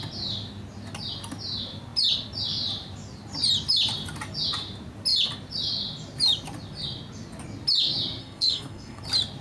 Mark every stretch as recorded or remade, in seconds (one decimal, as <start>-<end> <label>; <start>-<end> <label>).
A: 0.0-8.2 recorded; 8.2-9.0 remade; 9.0-9.4 recorded